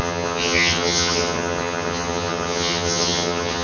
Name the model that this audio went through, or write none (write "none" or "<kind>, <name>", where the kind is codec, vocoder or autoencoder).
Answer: vocoder, HiFi-GAN